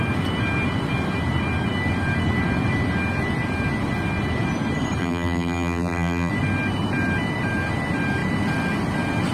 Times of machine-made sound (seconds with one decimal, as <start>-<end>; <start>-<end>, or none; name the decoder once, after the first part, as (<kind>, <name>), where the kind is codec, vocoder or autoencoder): 5.0-6.3 (vocoder, BigVGAN v2)

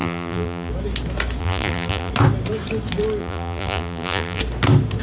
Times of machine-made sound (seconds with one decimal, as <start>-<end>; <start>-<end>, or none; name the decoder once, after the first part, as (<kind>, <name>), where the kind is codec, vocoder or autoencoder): 0.0-0.7 (vocoder, BigVGAN v2); 1.4-2.1; 3.2-4.4

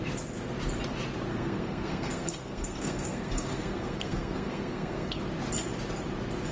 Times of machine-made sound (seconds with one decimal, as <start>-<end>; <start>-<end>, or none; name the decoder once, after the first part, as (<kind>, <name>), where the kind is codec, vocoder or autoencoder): 1.3-5.2 (codec, SNAC)

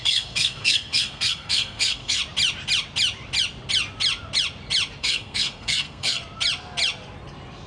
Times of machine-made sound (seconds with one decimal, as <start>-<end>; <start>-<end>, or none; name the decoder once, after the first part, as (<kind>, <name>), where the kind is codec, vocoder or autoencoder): 0.0-2.2 (codec, SNAC); 5.0-6.2

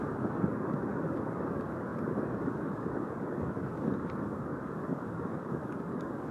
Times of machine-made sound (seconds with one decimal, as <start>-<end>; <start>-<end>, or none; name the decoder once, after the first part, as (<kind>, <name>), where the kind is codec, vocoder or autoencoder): 0.0-6.3 (codec, DAC)

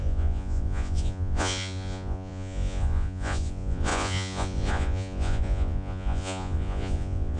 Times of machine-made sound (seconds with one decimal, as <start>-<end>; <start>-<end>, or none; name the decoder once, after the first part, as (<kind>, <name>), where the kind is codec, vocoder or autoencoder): 0.0-7.4 (vocoder, Vocos)

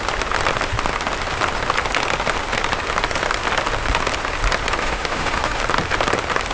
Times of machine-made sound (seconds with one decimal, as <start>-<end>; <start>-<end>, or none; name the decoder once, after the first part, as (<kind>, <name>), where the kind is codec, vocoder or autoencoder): 4.8-5.6 (autoencoder, DAC-VAE)

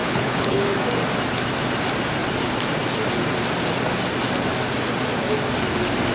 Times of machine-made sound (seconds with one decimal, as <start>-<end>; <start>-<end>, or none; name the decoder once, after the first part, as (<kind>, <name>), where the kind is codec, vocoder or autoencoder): 0.0-0.6 (codec, HILCodec)